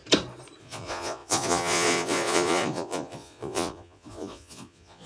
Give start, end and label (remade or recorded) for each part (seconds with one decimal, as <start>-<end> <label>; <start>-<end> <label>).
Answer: 0.0-0.6 recorded; 0.6-5.1 remade